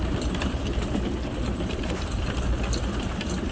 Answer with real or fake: real